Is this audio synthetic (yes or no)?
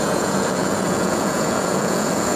yes